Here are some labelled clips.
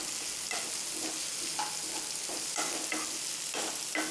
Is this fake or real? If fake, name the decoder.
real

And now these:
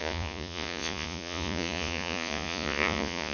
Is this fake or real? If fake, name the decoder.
fake, vocoder, Vocos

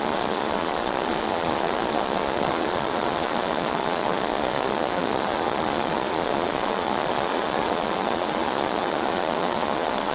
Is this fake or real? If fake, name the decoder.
fake, vocoder, Vocos